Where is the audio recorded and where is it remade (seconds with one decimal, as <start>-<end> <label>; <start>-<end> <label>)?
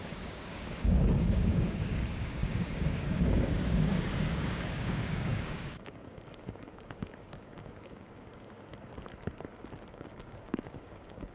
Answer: 0.0-8.7 remade; 8.7-9.9 recorded; 9.9-11.3 remade